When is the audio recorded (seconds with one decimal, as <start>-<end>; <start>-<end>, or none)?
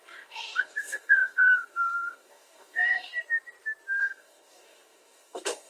3.1-4.0